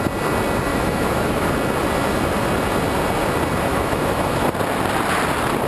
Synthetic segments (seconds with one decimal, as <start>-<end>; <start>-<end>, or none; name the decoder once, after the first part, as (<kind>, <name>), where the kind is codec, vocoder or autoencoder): 0.7-1.5 (autoencoder, DAC-VAE); 3.7-4.4